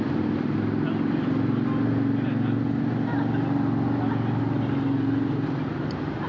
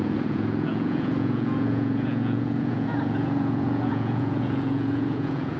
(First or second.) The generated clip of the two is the second